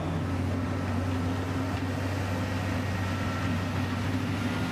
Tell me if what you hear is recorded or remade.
recorded